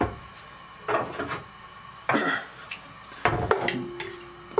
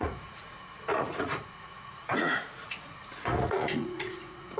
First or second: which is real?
first